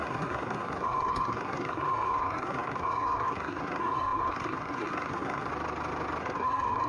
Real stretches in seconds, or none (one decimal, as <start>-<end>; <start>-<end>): 5.5-6.2